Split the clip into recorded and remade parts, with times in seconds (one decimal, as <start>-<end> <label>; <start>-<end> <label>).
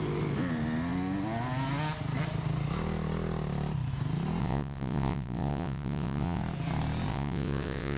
0.0-4.4 recorded; 4.4-6.4 remade; 6.4-7.1 recorded; 7.1-8.0 remade